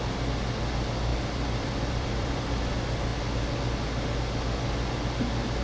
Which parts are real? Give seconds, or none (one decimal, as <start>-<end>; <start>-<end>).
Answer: 0.0-1.1; 2.7-5.6